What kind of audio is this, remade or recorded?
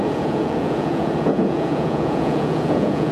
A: remade